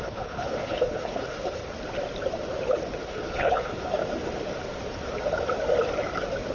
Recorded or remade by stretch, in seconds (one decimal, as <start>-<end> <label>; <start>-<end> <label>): 0.0-1.6 remade; 1.6-3.0 recorded; 3.0-4.0 remade; 4.0-6.5 recorded